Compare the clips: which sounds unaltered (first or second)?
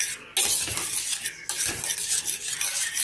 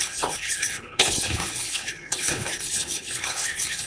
first